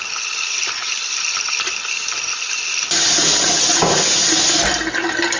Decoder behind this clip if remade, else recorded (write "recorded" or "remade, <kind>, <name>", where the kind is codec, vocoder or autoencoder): recorded